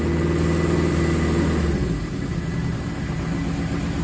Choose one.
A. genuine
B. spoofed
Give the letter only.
A